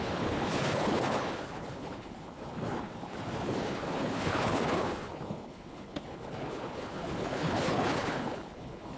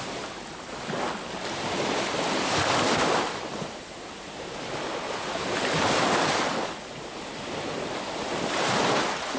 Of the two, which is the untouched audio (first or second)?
second